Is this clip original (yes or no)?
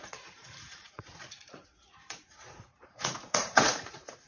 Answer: no